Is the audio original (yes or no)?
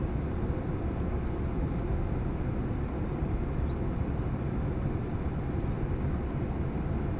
yes